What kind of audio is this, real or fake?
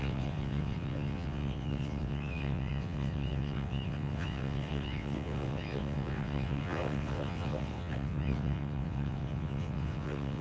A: fake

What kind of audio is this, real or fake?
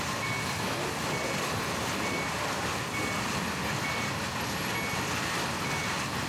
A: real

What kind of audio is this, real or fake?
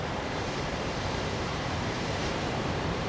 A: fake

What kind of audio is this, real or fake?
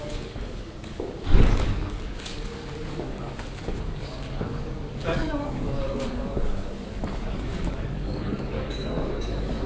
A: fake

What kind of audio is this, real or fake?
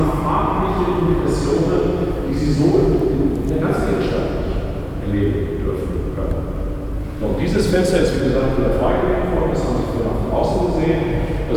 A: fake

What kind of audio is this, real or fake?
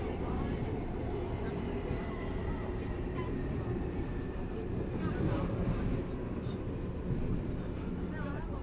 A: fake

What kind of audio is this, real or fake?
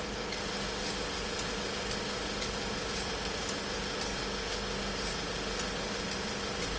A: real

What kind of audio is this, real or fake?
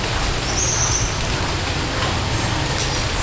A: real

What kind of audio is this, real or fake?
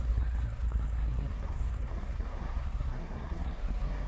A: fake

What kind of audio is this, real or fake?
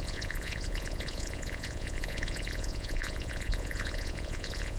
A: fake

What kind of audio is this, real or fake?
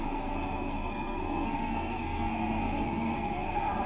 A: fake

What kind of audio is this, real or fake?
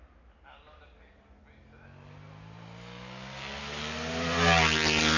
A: real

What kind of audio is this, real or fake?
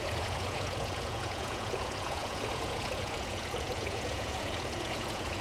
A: fake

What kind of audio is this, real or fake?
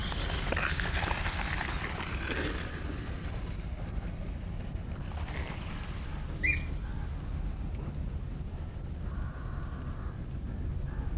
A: real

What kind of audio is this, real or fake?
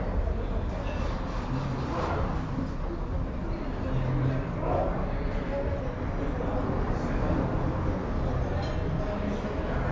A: real